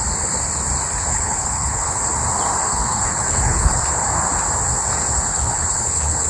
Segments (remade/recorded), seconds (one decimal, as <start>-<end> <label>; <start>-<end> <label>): 0.0-1.1 recorded; 1.1-2.0 remade; 2.0-2.7 recorded; 2.7-3.8 remade; 3.8-5.3 recorded; 5.3-6.3 remade